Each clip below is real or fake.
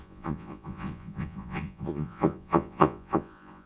fake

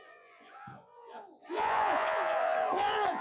fake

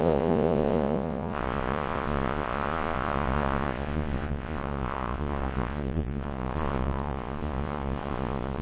fake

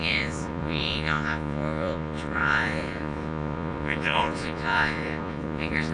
fake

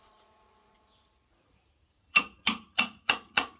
fake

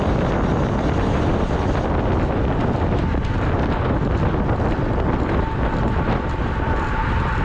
real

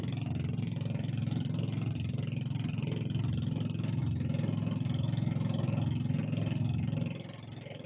real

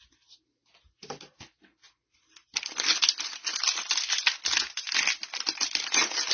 real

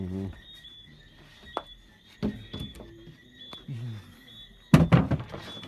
real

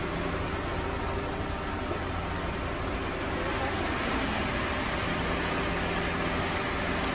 real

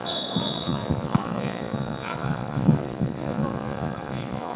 fake